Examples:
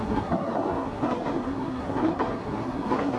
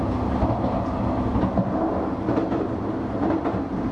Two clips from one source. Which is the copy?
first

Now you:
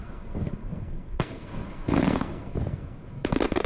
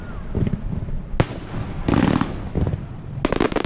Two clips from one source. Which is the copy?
first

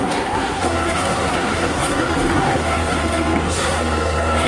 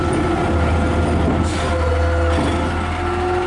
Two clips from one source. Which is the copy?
first